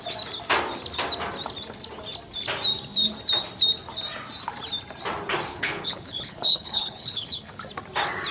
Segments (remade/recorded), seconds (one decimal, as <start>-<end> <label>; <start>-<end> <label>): 0.0-5.5 recorded; 5.5-7.6 remade; 7.6-8.3 recorded